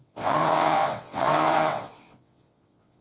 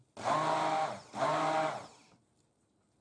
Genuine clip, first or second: second